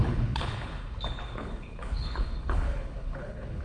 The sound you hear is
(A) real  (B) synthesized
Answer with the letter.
B